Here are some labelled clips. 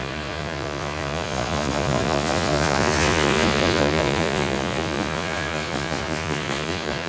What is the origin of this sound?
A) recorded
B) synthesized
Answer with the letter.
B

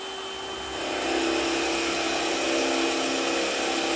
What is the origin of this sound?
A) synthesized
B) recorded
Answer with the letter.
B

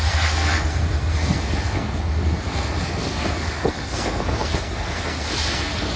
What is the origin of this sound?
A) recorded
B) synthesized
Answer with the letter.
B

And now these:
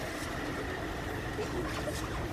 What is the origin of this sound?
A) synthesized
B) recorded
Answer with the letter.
B